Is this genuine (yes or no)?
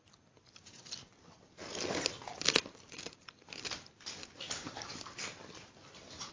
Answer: yes